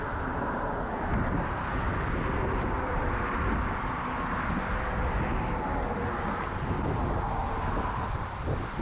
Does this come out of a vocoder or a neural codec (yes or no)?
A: no